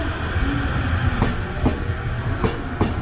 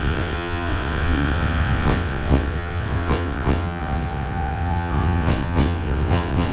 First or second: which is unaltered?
first